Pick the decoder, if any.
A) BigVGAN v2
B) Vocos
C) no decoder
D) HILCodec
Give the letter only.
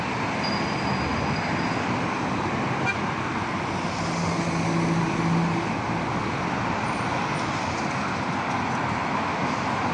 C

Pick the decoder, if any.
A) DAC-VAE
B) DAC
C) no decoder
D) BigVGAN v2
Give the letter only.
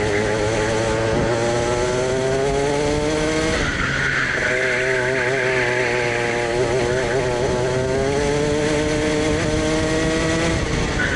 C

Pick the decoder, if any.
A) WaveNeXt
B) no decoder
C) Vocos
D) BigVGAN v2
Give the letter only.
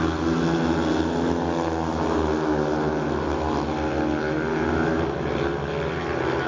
B